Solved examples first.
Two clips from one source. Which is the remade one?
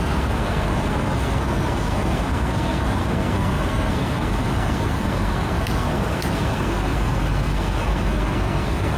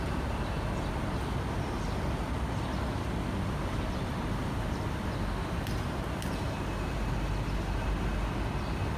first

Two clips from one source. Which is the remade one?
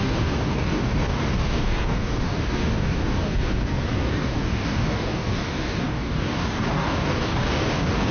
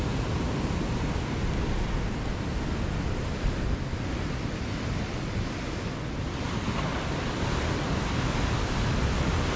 first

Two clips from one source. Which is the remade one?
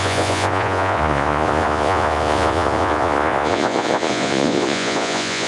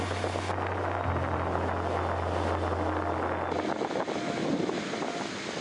first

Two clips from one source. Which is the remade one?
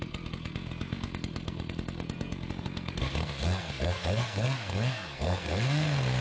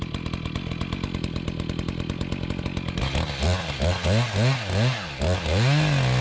first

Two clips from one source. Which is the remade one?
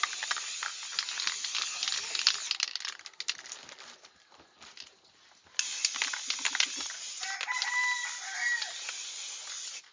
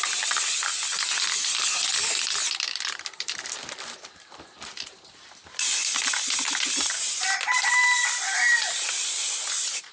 second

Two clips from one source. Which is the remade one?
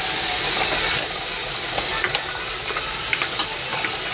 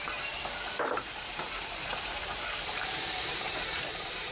second